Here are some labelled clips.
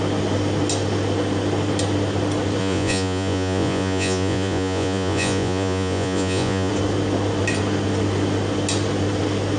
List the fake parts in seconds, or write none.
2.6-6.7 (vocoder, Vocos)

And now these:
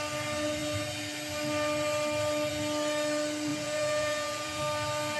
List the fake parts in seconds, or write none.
3.5-4.6 (vocoder, Vocos)

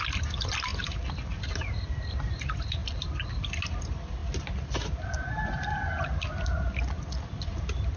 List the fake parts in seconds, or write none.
none

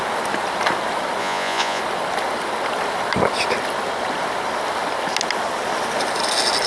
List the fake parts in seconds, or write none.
1.2-1.8 (vocoder, Vocos)

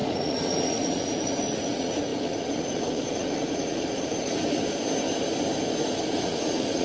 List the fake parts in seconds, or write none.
0.0-4.6 (vocoder, Vocos); 6.2-6.8

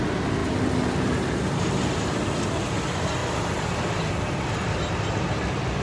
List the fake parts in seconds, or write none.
none

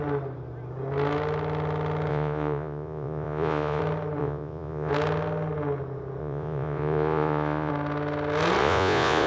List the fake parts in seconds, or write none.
2.1-3.8 (vocoder, Vocos); 4.2-4.9; 6.2-7.7; 8.6-9.3